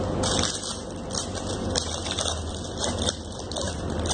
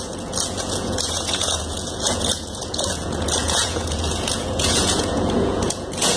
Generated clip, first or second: second